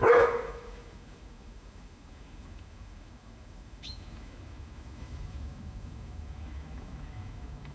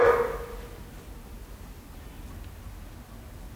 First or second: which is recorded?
second